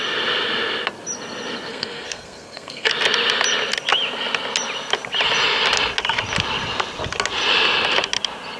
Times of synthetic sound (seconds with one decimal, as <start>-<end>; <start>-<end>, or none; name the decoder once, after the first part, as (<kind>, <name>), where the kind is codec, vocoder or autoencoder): 1.7-2.9 (codec, SNAC)